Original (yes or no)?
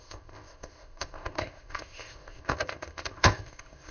no